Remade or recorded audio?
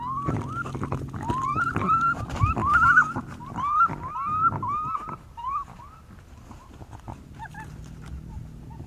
recorded